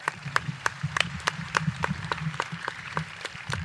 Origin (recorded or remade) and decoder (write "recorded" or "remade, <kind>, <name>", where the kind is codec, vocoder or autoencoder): remade, vocoder, BigVGAN v2